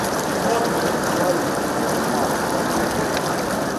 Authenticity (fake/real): real